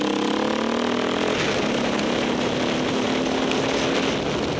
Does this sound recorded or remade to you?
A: recorded